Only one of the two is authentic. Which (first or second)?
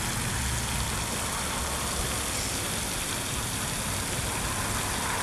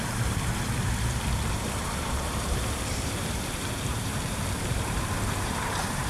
first